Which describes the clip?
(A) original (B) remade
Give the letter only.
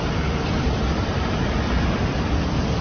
B